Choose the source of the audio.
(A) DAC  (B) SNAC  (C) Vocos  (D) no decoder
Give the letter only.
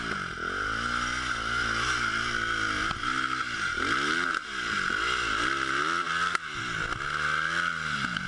D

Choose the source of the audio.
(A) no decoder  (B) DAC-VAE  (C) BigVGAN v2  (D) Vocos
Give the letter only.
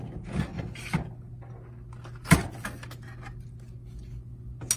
A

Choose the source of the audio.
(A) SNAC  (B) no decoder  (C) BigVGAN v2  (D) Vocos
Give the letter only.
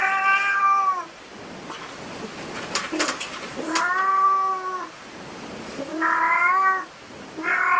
B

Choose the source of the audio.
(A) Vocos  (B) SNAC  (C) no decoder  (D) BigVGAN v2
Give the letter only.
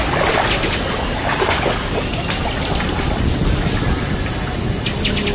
C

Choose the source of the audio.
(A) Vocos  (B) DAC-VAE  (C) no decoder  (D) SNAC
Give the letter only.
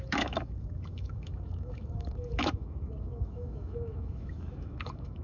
B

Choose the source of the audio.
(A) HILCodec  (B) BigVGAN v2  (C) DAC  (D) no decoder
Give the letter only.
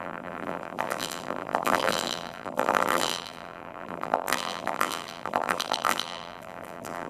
B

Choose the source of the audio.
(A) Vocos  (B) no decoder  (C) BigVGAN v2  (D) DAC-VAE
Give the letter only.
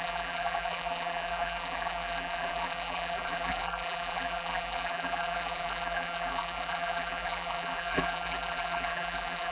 C